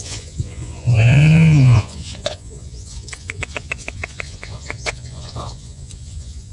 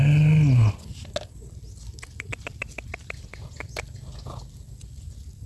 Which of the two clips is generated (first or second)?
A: first